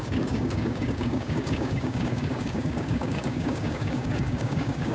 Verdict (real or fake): fake